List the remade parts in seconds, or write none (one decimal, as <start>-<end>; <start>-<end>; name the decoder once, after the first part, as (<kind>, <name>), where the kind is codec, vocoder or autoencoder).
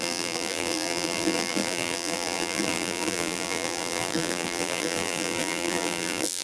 0.0-6.4 (vocoder, BigVGAN v2)